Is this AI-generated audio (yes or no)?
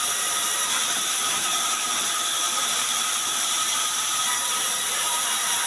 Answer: yes